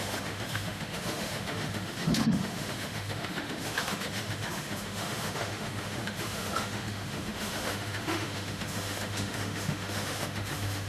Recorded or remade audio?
remade